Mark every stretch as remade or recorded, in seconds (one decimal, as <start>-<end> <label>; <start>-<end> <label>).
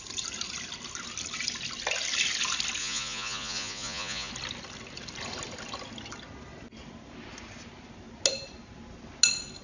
0.0-2.8 recorded; 2.8-4.3 remade; 4.3-9.6 recorded